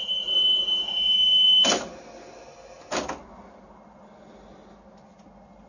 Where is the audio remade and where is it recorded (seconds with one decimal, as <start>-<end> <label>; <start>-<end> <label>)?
0.0-5.7 recorded